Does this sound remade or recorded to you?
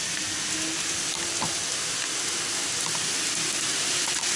recorded